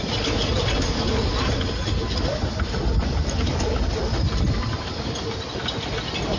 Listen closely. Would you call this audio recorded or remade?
recorded